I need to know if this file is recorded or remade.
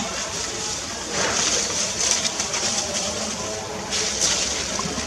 remade